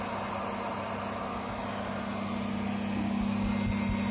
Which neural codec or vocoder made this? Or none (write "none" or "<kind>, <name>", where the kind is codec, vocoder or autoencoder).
none